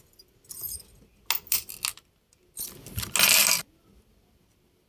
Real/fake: real